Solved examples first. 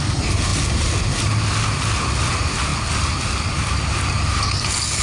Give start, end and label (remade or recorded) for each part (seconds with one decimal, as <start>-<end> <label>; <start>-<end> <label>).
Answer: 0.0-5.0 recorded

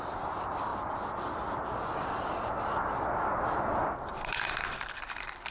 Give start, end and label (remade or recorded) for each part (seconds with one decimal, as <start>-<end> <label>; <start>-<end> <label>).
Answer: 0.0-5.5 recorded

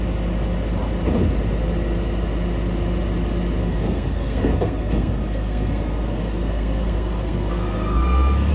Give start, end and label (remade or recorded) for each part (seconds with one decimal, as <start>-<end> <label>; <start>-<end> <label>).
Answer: 0.0-3.6 recorded; 3.6-8.5 remade

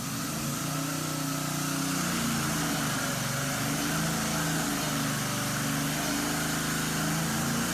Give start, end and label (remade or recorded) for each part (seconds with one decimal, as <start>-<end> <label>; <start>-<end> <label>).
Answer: 0.0-7.7 recorded

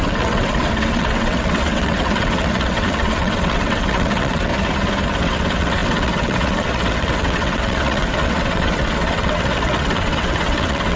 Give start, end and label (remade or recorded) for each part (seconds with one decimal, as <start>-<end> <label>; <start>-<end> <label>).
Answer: 0.0-4.5 remade; 4.5-5.2 recorded; 5.2-11.0 remade

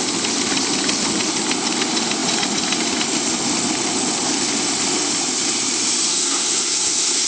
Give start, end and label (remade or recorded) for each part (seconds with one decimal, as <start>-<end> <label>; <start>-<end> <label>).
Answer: 0.0-6.1 recorded; 6.1-7.3 remade

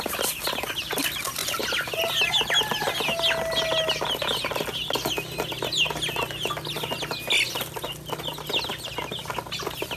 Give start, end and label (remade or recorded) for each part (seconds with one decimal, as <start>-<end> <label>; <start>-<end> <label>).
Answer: 0.0-10.0 recorded